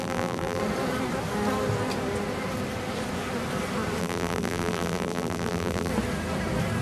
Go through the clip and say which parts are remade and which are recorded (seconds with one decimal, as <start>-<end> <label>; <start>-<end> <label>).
0.0-0.6 remade; 0.6-4.0 recorded; 4.0-5.9 remade; 5.9-6.8 recorded